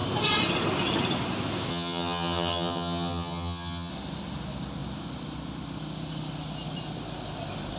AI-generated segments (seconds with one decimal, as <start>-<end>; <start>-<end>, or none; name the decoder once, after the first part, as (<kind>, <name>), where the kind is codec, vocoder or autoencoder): 1.7-3.9 (vocoder, HiFi-GAN)

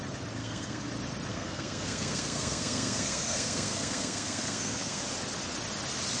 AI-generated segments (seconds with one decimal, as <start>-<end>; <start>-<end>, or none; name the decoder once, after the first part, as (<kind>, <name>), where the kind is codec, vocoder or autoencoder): 0.4-0.9 (codec, SNAC); 1.3-5.0